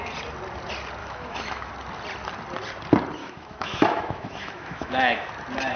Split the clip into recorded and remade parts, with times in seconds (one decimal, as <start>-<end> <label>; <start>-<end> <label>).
0.0-1.0 recorded; 1.0-1.7 remade; 1.7-3.2 recorded; 3.2-5.3 remade; 5.3-5.8 recorded